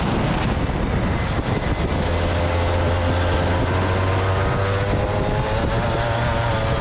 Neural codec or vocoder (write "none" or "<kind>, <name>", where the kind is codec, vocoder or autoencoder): none